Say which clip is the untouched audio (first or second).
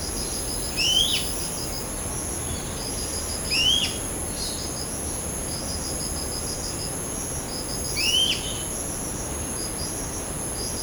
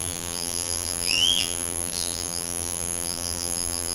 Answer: first